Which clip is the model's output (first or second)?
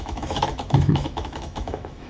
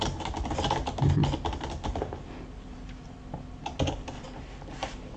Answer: first